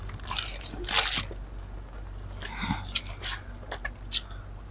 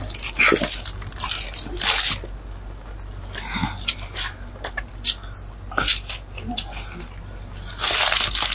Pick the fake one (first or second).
second